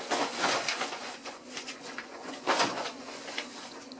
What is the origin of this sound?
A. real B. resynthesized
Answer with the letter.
B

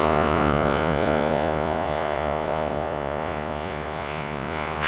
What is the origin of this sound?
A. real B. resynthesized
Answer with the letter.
B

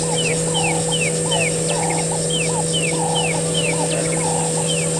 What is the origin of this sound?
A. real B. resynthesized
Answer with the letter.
A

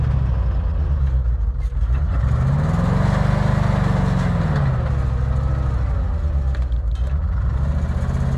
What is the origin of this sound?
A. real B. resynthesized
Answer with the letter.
A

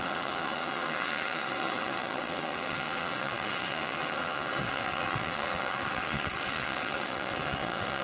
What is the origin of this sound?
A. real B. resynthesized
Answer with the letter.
B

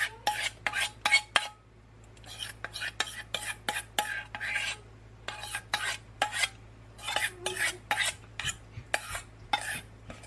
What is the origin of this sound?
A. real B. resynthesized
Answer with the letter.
A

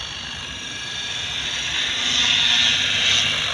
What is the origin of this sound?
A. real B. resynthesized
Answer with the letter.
A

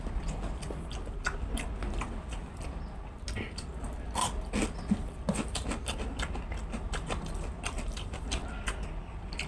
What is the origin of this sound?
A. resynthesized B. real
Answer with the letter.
B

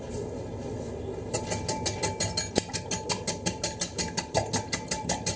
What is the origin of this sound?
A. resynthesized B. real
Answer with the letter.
B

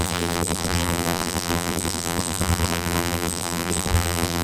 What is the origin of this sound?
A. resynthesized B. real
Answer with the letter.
A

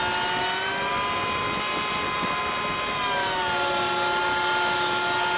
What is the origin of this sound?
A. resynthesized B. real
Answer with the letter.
B